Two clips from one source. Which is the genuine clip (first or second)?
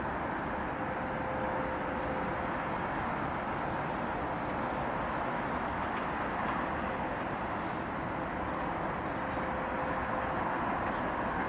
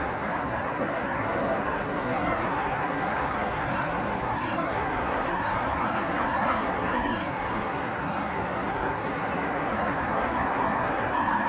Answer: first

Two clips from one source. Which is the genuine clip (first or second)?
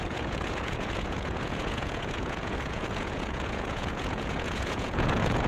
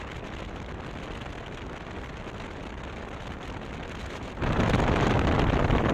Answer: second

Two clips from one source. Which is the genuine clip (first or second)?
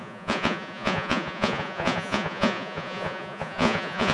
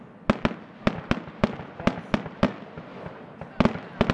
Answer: second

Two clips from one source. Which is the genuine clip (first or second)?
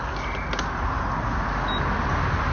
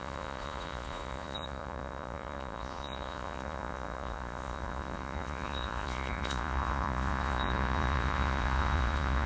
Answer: first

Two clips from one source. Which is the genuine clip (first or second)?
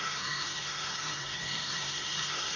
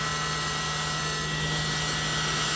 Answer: second